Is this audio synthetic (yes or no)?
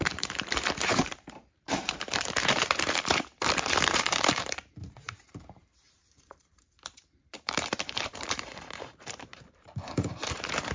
yes